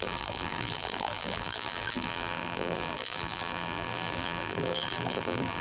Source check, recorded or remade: remade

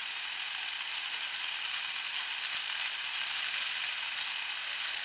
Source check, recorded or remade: recorded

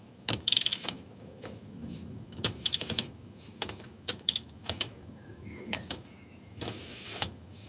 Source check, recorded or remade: remade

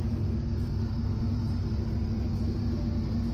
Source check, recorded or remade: recorded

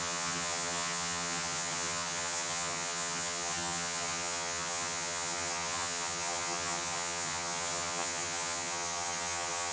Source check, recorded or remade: remade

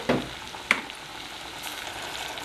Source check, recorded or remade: recorded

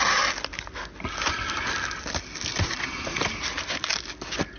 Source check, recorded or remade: recorded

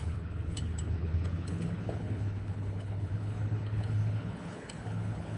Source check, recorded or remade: remade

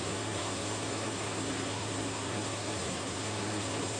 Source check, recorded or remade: remade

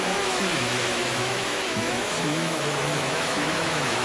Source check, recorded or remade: remade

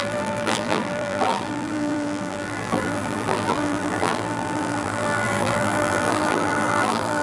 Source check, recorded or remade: remade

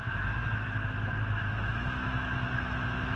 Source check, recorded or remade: remade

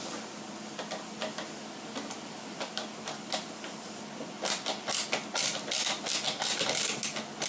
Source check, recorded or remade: recorded